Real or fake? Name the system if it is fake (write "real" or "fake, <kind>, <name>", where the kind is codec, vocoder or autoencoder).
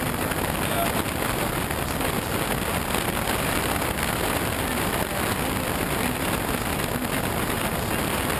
real